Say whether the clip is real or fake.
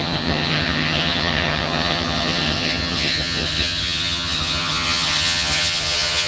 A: fake